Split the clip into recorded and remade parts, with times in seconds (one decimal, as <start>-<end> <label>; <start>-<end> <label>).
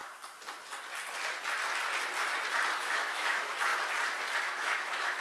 0.0-2.8 recorded; 2.8-3.7 remade; 3.7-4.4 recorded; 4.4-5.2 remade